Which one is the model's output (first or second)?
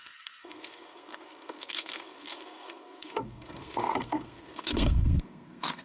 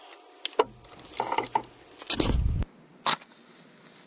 first